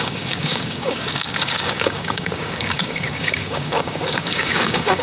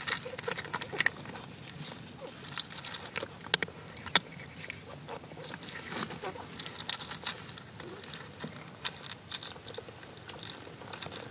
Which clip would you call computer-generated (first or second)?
first